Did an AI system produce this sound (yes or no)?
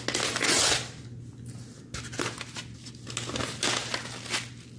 no